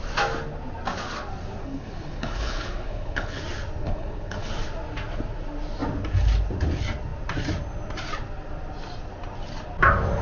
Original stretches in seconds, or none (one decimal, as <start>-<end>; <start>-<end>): 0.0-1.6; 3.4-3.8; 4.5-10.2